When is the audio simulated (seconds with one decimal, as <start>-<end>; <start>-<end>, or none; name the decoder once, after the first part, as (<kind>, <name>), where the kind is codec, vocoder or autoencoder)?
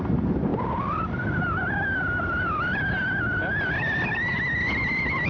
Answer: none